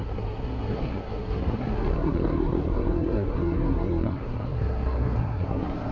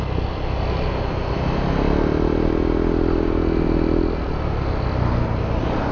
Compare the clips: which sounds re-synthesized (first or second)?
first